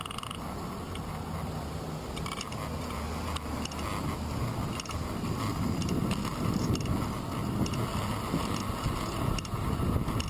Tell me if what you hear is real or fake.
real